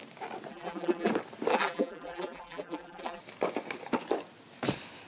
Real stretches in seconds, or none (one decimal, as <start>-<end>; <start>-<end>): 0.0-0.5; 1.1-1.5; 3.2-5.1